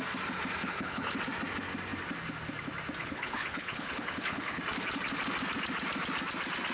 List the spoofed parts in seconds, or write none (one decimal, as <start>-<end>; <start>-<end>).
0.6-1.2; 3.0-4.6